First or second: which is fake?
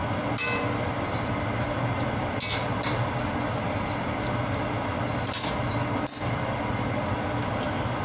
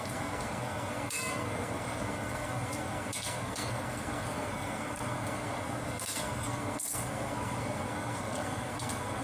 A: second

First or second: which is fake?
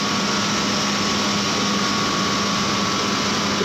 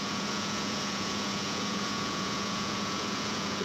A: second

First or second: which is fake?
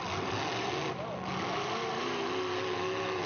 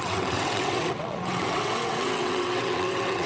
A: second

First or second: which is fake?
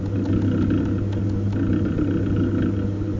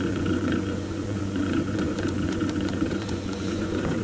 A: second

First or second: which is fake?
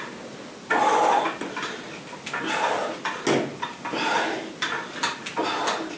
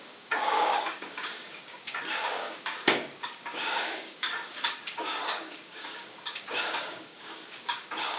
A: second